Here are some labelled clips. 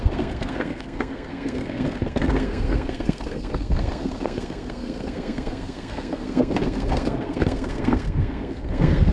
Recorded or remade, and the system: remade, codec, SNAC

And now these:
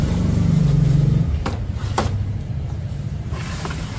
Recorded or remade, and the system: remade, vocoder, BigVGAN v2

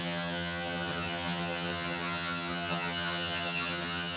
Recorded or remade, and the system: remade, vocoder, HiFi-GAN